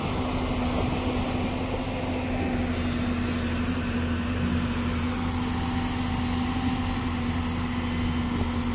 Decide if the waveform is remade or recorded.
recorded